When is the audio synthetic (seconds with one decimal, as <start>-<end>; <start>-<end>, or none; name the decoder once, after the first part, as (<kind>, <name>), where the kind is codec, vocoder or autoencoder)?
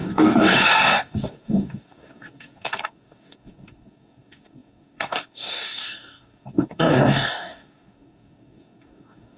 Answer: 0.0-9.4 (codec, DAC)